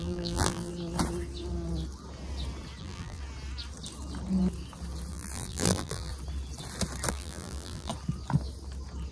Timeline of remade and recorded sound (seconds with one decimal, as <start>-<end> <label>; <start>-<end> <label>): 0.0-0.7 remade; 0.7-2.8 recorded; 2.8-3.2 remade; 3.2-5.1 recorded; 5.1-6.1 remade; 6.1-7.1 recorded; 7.1-7.9 remade; 7.9-9.1 recorded